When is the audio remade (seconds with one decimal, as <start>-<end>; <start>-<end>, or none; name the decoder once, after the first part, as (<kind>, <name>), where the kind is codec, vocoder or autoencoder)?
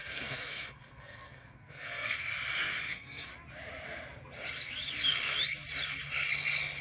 0.0-2.3 (codec, SNAC); 2.9-3.3